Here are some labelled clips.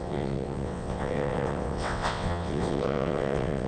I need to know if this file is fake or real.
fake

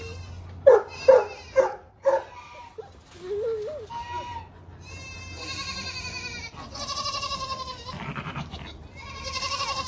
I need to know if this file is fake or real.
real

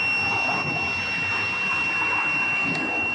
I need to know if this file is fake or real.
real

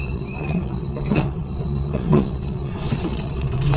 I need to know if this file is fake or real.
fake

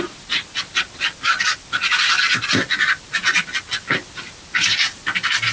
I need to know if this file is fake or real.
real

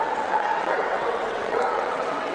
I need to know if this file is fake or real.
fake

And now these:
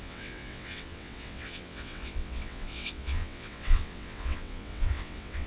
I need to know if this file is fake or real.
fake